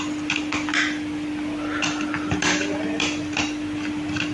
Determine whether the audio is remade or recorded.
recorded